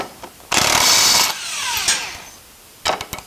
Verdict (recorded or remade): recorded